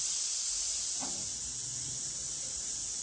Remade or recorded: recorded